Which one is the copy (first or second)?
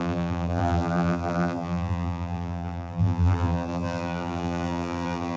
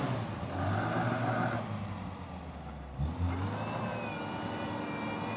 first